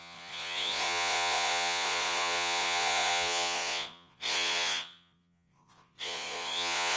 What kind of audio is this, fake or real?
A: fake